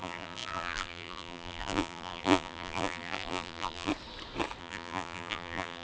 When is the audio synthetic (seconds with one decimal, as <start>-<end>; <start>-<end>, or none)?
0.0-3.9; 4.6-5.8